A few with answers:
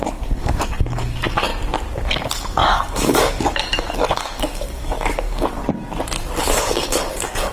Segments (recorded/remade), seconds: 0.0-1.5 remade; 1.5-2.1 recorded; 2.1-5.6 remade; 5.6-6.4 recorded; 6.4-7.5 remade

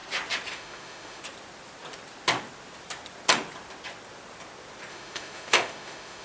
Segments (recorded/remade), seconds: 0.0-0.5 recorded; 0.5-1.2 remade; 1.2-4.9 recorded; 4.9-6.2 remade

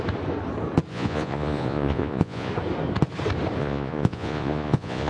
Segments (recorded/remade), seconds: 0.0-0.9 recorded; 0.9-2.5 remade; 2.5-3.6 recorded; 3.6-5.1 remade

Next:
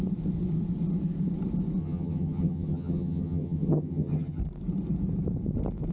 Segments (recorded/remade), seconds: 0.0-1.8 recorded; 1.8-4.4 remade; 4.4-5.9 recorded

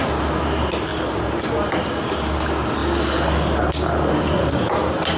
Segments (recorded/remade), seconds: 0.0-5.2 recorded

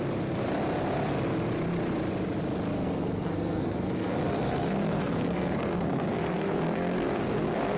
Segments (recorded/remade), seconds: 0.0-2.7 recorded; 2.7-7.8 remade